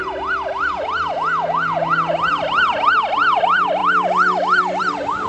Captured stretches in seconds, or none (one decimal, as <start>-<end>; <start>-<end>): 0.0-3.2; 3.8-4.8